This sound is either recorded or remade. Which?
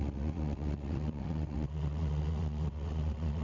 remade